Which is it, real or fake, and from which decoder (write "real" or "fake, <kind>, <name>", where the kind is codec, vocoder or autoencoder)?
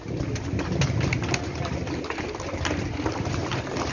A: real